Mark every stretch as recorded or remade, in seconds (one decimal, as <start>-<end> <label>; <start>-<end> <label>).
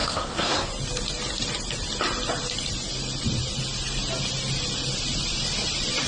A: 0.0-0.7 remade; 0.7-6.1 recorded